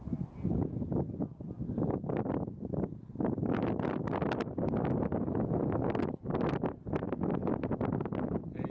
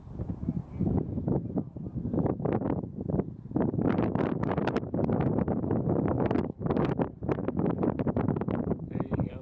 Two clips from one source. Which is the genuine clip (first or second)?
first